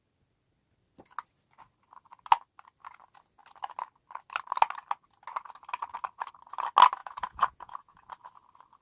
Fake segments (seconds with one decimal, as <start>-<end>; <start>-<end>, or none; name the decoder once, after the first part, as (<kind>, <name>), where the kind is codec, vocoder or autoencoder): 7.0-8.1 (vocoder, Vocos)